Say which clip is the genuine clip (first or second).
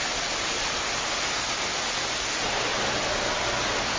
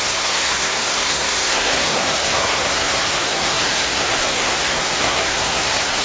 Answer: first